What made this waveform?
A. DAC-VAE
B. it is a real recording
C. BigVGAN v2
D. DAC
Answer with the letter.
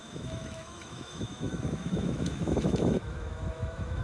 A